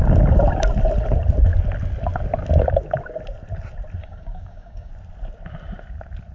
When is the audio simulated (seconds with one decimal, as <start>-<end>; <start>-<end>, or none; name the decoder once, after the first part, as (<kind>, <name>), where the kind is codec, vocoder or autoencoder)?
4.0-4.9 (codec, DAC)